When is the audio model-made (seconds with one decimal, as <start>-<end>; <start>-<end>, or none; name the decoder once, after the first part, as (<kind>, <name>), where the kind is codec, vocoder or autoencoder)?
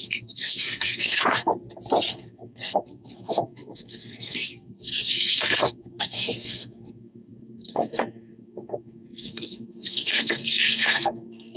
0.0-1.5 (codec, SNAC); 2.1-11.6